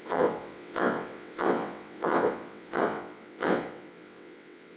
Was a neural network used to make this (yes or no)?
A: yes